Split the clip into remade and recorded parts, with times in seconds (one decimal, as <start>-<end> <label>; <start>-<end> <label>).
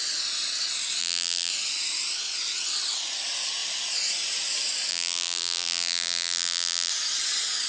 0.0-1.0 recorded; 1.0-1.5 remade; 1.5-4.9 recorded; 4.9-6.9 remade; 6.9-7.7 recorded